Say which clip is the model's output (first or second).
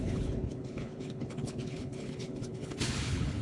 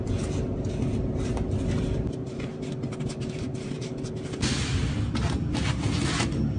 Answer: first